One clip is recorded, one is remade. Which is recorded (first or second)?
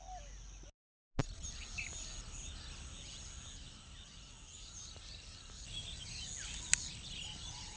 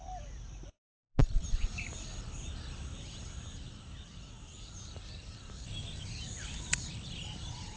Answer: first